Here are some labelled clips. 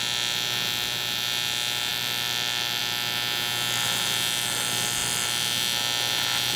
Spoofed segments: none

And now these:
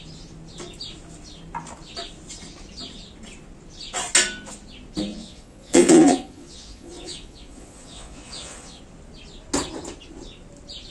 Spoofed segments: 5.1-8.8 (vocoder, Vocos)